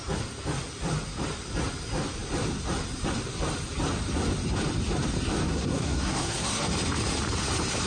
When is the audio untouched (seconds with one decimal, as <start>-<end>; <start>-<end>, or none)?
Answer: 0.0-5.5; 6.6-7.9

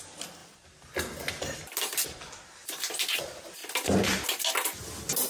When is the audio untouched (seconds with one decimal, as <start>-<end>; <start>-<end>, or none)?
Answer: 0.0-5.3

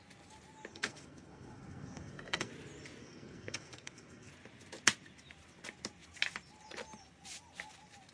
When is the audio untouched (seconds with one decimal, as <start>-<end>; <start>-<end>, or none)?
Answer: 0.0-0.7; 2.5-3.0; 4.3-8.1

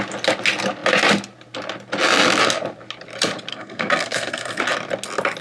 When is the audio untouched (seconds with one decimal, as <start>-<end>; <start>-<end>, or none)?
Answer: 0.0-3.5; 4.6-5.4